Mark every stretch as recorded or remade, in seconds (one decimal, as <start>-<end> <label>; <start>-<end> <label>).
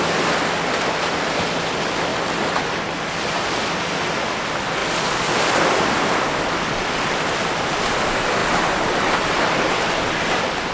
0.0-10.7 recorded